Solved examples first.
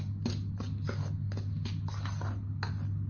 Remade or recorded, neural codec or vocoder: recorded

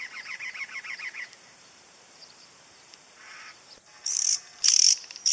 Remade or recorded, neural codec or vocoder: remade, vocoder, BigVGAN v2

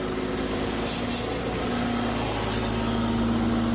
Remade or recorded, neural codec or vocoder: recorded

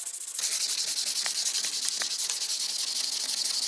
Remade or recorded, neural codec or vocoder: recorded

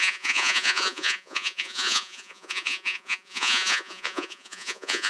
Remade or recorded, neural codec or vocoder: remade, vocoder, Vocos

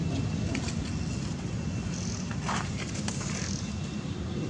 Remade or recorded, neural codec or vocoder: recorded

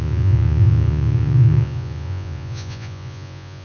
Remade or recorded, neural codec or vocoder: remade, vocoder, Vocos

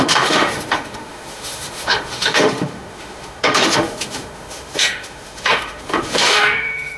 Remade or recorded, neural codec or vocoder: remade, autoencoder, DAC-VAE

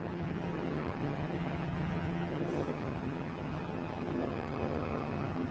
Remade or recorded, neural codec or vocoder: remade, vocoder, HiFi-GAN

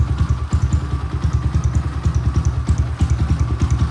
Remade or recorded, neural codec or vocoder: recorded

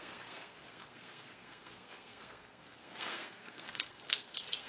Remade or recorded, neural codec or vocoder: remade, codec, SNAC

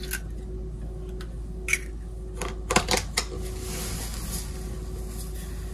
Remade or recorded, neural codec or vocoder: recorded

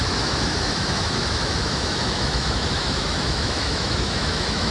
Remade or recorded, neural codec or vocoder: remade, autoencoder, DAC-VAE